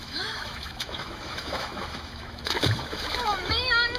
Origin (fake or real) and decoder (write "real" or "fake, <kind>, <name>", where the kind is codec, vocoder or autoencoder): fake, autoencoder, DAC-VAE